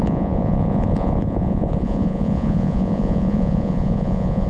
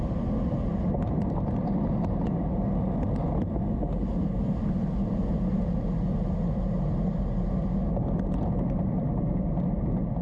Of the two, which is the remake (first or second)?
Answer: first